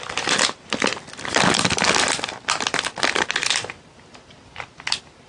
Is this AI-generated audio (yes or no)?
no